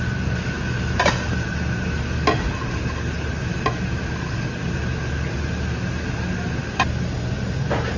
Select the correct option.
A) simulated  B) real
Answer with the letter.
B